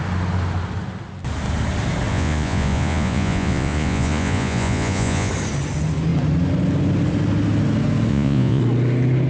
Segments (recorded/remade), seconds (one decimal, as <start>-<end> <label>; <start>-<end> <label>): 0.0-2.1 recorded; 2.1-5.3 remade; 5.3-8.1 recorded; 8.1-8.6 remade; 8.6-9.3 recorded